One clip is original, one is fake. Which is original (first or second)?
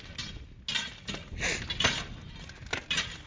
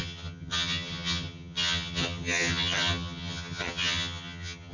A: first